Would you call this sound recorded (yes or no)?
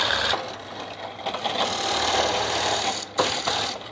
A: no